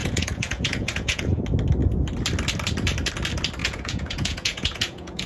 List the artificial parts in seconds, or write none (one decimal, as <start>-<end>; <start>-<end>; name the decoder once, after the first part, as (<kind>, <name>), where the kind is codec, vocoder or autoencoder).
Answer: 0.0-1.4 (vocoder, Vocos); 3.6-5.3